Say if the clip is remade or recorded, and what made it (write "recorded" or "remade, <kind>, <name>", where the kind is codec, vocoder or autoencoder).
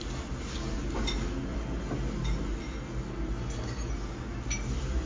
recorded